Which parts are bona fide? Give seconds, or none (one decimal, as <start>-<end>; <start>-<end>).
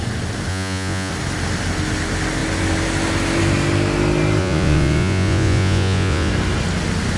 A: 0.0-0.5; 1.1-4.4; 6.3-7.2